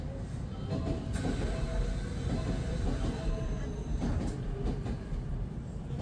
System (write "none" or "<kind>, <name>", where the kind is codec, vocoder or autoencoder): none